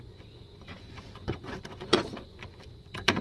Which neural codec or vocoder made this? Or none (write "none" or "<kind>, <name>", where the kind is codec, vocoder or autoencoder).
vocoder, Vocos